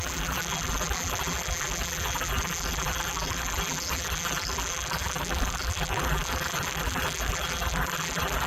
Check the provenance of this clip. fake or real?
fake